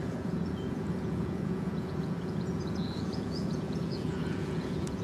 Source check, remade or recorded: remade